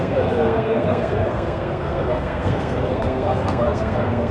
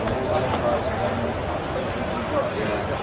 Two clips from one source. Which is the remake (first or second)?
first